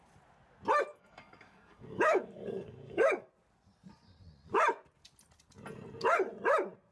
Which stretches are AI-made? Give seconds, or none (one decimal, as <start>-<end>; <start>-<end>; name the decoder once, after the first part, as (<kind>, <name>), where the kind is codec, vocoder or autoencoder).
0.9-3.3 (codec, DAC)